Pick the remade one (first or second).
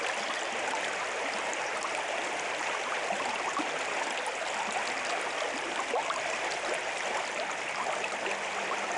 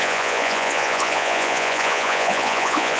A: second